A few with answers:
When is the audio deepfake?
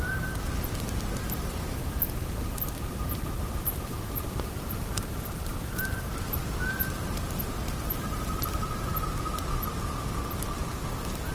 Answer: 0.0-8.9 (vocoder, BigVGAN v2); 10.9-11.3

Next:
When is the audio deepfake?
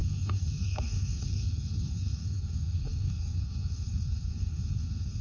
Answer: 0.0-5.2 (codec, SNAC)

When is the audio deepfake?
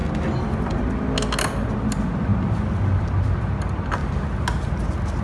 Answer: none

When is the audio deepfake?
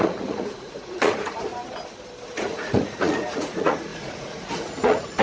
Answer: 0.0-1.5 (vocoder, Vocos); 2.3-5.2